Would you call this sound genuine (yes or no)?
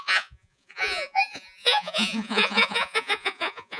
no